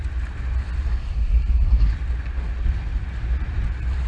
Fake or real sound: real